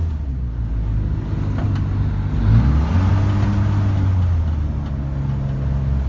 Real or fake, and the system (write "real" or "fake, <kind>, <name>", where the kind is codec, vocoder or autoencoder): real